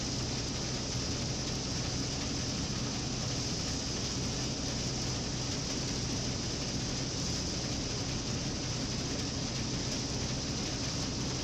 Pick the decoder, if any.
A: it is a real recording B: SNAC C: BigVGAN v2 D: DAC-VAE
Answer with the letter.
A